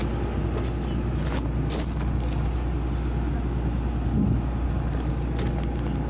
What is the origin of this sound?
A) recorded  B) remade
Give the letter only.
A